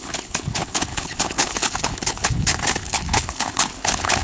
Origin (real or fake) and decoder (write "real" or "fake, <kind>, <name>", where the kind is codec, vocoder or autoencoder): fake, codec, HILCodec